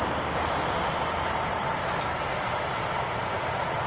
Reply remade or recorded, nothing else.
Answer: remade